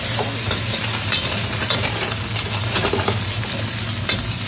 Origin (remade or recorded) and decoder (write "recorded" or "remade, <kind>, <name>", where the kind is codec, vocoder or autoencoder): recorded